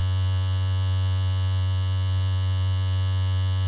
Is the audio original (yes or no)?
no